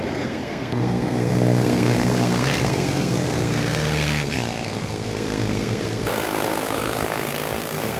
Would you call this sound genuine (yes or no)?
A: no